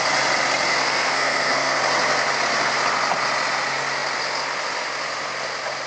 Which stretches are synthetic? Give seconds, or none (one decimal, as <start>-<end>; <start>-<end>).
0.7-1.8